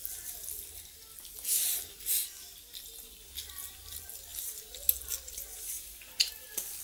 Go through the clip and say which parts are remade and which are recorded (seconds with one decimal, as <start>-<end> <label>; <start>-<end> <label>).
0.0-2.2 recorded; 2.2-3.2 remade; 3.2-6.8 recorded